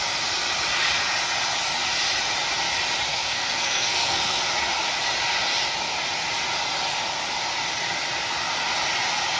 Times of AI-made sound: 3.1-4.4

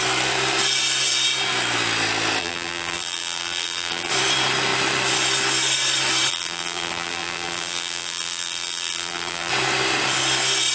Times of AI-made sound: 2.4-4.1; 6.3-9.5

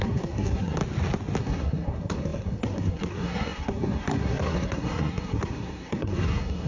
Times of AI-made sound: 0.0-0.8; 1.4-6.7

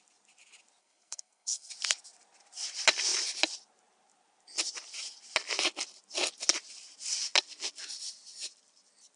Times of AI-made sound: 0.8-1.7

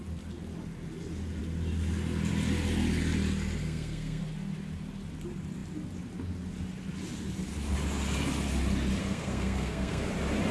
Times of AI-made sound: 3.6-4.2; 9.0-10.1

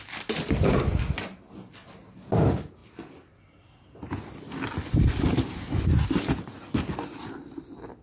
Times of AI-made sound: none

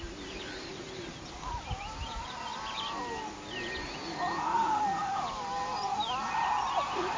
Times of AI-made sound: none